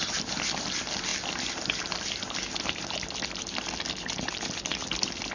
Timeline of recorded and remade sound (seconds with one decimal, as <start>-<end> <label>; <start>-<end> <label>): 0.0-5.3 recorded